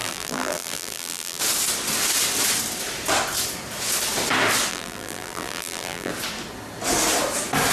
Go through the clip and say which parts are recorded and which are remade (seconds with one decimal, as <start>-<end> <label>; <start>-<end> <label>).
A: 0.0-1.4 remade; 1.4-4.7 recorded; 4.7-6.1 remade; 6.1-7.7 recorded